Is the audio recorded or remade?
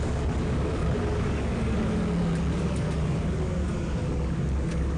remade